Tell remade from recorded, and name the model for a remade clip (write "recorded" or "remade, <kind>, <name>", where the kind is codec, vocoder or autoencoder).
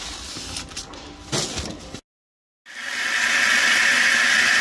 recorded